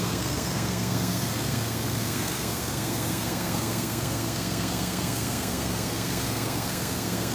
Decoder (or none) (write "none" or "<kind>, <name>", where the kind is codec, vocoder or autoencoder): codec, SNAC